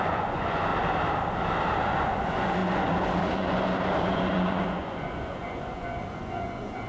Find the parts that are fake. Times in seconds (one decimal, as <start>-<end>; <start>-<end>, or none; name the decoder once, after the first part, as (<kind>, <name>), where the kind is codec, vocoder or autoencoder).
0.0-0.7 (vocoder, Vocos); 1.8-6.9